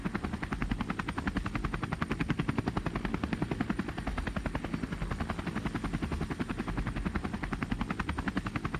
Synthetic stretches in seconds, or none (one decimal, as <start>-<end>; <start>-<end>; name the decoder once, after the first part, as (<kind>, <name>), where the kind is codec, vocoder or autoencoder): none